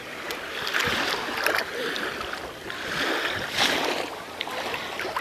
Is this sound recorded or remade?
recorded